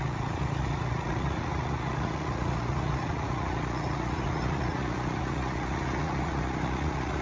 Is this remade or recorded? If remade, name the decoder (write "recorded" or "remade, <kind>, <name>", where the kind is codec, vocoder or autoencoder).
remade, vocoder, Vocos